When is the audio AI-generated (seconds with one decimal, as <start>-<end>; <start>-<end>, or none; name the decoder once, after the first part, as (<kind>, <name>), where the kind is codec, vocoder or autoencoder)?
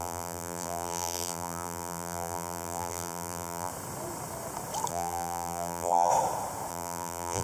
0.0-3.7 (vocoder, BigVGAN v2); 4.9-6.1; 6.7-7.4